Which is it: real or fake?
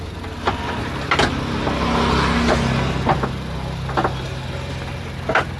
real